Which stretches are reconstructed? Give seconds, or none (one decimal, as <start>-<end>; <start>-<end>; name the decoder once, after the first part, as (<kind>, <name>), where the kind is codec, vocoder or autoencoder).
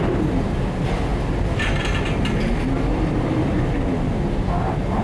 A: none